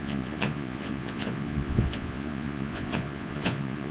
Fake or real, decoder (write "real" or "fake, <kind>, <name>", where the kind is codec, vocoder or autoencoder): fake, vocoder, Vocos